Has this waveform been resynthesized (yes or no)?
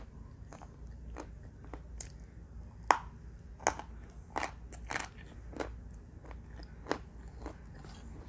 no